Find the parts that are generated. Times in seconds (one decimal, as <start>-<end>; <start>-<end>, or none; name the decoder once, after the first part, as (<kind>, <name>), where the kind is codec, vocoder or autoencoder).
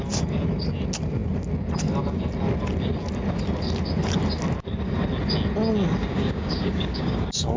6.0-7.6 (codec, DAC)